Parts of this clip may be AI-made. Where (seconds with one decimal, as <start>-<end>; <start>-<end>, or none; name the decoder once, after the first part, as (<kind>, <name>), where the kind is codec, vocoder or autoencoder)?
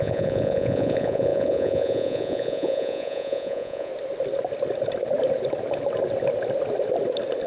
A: 0.0-3.9 (vocoder, Vocos)